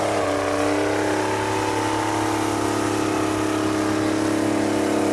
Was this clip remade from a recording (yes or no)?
no